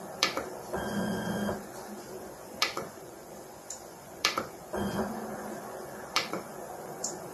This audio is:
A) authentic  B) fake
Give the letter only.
B